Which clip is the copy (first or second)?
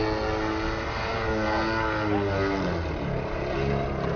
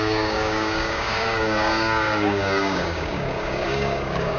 second